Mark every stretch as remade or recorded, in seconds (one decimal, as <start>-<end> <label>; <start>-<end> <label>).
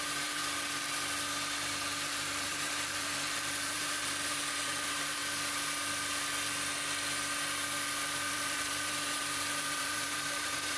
0.0-0.4 remade; 0.4-2.2 recorded; 2.2-5.2 remade; 5.2-8.3 recorded; 8.3-10.8 remade